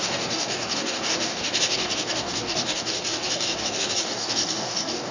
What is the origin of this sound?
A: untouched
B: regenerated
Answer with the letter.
B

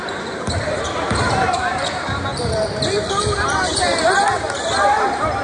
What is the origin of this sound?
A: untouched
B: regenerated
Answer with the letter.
B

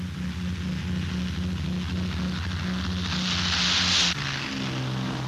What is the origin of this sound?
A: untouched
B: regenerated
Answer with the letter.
A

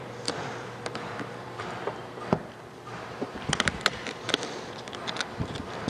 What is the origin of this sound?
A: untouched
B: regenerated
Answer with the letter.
B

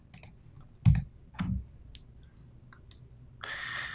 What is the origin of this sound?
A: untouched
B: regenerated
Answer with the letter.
A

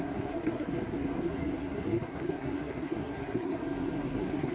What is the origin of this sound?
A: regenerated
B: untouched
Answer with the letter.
A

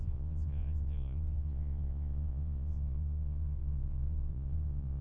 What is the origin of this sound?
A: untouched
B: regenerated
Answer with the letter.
B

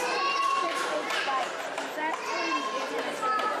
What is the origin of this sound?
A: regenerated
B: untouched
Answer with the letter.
A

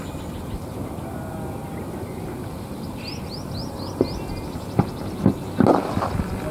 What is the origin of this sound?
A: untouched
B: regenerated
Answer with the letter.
A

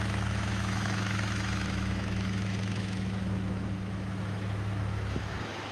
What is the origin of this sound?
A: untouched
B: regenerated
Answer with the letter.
B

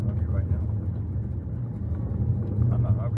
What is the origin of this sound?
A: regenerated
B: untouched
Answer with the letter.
B